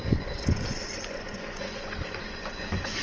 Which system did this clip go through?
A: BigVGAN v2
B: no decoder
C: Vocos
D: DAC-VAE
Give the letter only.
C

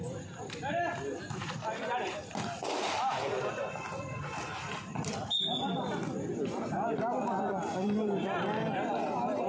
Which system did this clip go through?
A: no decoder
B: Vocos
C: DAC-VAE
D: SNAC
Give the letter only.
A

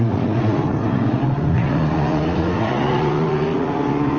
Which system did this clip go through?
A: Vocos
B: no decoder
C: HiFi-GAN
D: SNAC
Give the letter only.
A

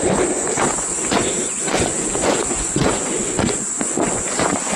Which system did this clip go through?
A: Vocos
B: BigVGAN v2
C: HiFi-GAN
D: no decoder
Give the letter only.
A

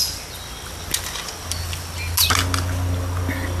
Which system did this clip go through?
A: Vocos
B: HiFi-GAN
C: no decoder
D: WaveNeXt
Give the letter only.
C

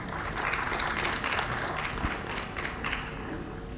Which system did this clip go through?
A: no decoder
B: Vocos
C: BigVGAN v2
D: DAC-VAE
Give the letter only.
A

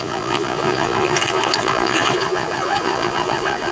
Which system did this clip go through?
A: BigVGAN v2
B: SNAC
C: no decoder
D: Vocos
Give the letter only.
D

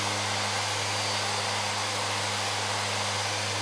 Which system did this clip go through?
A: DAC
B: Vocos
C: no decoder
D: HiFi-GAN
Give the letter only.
C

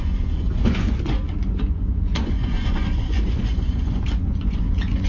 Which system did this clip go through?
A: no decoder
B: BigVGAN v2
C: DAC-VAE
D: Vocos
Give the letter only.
D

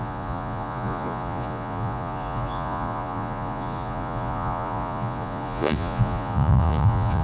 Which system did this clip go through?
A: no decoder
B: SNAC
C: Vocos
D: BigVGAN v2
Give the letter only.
C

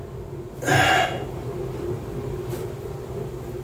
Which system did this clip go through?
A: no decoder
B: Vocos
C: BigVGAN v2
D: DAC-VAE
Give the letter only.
A